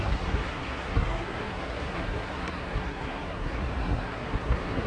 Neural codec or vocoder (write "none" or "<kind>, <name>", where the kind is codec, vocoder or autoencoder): codec, SNAC